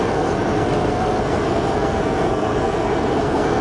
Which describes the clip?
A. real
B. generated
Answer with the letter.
B